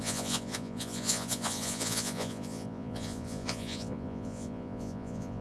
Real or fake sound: fake